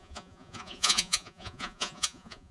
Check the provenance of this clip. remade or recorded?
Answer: remade